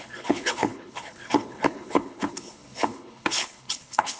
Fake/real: fake